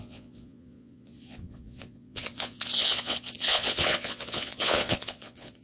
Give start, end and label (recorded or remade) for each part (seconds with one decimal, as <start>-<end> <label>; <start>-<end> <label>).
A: 0.0-5.6 remade